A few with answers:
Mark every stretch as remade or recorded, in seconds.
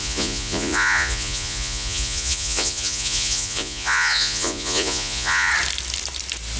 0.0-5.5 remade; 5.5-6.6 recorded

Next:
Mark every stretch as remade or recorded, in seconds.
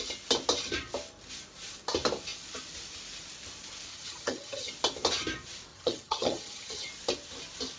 0.0-3.9 recorded; 3.9-4.7 remade; 4.7-5.7 recorded; 5.7-6.9 remade; 6.9-7.8 recorded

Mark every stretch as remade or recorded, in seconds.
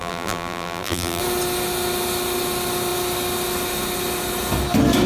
0.0-1.2 remade; 1.2-5.1 recorded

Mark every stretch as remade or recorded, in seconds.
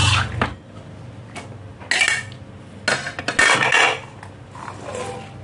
0.0-5.4 recorded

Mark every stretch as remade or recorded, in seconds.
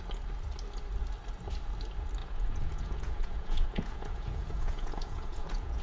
0.0-2.2 recorded; 2.2-5.8 remade